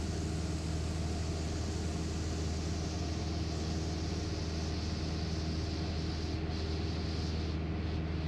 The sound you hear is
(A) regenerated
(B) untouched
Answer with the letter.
B